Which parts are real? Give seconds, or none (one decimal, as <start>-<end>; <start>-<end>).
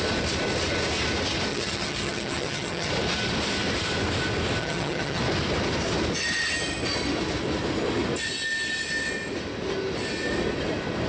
0.0-1.5; 2.9-4.6; 5.2-11.1